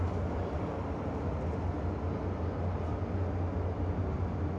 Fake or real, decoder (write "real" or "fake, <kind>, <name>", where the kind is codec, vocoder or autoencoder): real